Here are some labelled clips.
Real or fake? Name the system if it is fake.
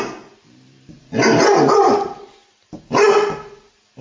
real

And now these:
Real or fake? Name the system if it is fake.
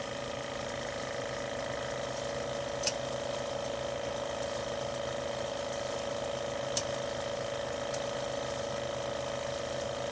real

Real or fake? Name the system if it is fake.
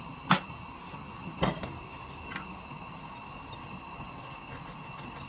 real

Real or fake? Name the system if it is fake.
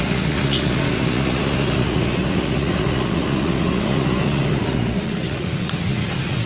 fake, vocoder, Vocos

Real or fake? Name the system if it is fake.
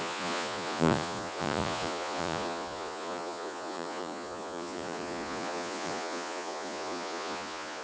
fake, vocoder, Vocos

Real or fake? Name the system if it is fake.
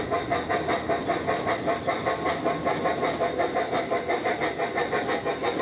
real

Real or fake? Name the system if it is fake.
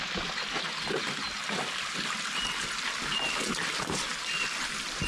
real